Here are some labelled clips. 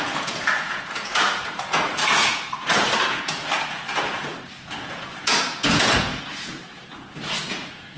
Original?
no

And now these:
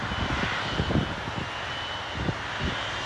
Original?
yes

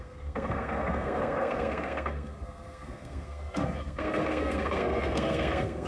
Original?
no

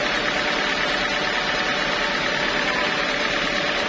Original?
yes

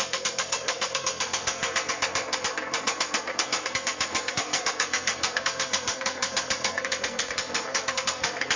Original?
no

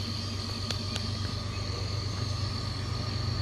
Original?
yes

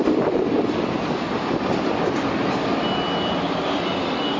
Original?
yes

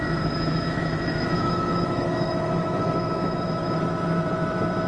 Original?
no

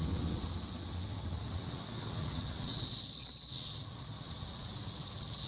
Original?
no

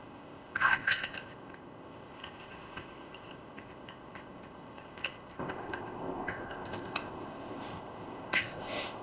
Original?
no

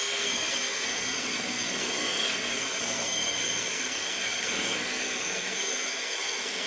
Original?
no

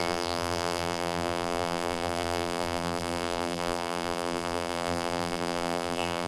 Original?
no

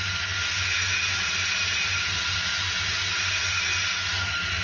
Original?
yes